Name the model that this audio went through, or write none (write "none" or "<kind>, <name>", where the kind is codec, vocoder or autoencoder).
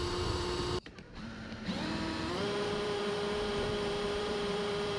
vocoder, BigVGAN v2